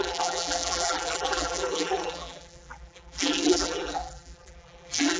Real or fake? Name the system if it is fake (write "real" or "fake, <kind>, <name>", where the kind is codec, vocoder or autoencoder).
fake, vocoder, BigVGAN v2